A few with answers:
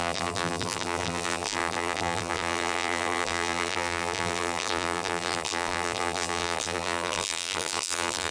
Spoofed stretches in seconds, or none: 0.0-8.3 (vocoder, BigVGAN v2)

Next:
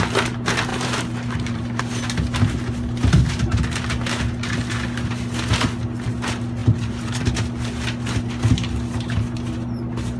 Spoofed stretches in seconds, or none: 0.7-1.8 (vocoder, BigVGAN v2); 6.6-7.3

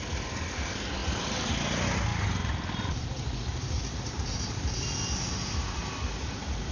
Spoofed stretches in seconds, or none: 1.0-1.5 (vocoder, BigVGAN v2); 3.5-5.8

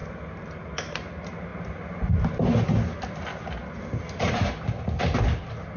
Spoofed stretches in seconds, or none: 0.0-1.1 (vocoder, BigVGAN v2)

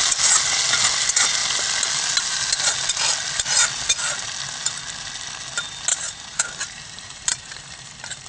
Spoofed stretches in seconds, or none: 5.9-8.3 (vocoder, BigVGAN v2)